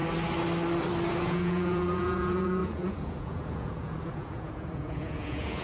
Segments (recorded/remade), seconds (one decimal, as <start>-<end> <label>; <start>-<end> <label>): 0.0-1.1 recorded; 1.1-5.6 remade